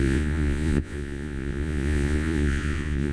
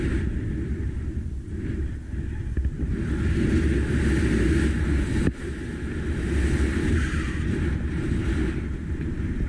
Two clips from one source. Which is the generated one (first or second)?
first